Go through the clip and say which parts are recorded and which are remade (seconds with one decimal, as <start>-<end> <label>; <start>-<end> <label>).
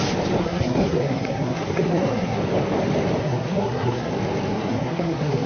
0.0-0.4 recorded; 0.4-2.4 remade; 2.4-3.2 recorded; 3.2-4.1 remade; 4.1-4.5 recorded; 4.5-5.5 remade